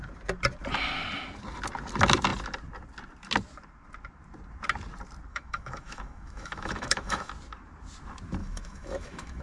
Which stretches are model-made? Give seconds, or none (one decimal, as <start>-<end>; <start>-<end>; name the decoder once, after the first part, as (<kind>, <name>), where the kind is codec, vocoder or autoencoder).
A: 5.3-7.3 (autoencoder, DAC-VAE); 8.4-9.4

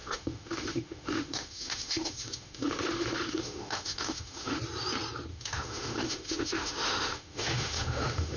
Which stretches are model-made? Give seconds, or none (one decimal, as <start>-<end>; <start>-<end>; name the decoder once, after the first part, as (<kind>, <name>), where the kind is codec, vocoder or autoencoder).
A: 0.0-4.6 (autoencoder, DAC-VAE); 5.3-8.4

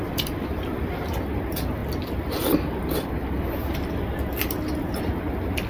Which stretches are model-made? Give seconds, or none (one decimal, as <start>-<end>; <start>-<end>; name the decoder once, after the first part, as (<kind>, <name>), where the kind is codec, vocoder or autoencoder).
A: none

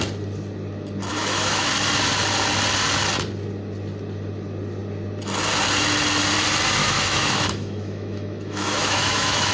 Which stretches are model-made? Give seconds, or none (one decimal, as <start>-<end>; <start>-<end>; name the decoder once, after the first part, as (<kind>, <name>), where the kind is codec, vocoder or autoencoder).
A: 1.1-1.7 (autoencoder, DAC-VAE); 6.8-9.5

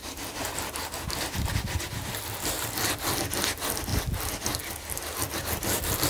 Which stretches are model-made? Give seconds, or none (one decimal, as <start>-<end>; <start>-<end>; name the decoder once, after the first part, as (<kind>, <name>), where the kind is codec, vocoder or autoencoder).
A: none

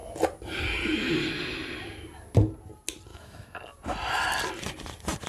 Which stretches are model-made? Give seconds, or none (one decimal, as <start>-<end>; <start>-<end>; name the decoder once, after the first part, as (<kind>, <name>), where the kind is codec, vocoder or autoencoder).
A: 3.1-3.6 (autoencoder, DAC-VAE)